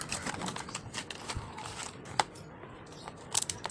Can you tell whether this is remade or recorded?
recorded